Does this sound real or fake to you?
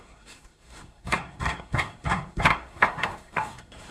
fake